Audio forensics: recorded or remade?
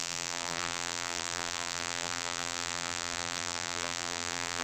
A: remade